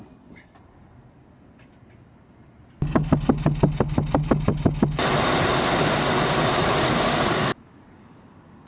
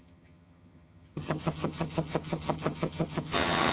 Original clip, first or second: first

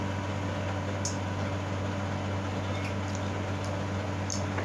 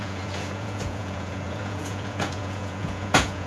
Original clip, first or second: first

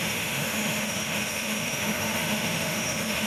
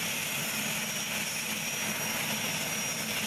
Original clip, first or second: second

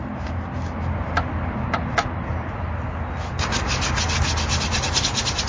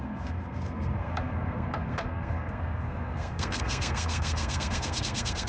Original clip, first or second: first